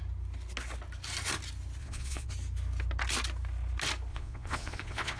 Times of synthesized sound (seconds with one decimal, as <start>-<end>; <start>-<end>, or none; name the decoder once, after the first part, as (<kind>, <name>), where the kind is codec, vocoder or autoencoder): 1.8-2.3 (vocoder, Vocos); 4.1-5.2